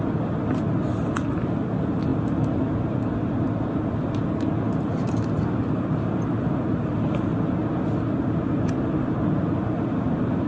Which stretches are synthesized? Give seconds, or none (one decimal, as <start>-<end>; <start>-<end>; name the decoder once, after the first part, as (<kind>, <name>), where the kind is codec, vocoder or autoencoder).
none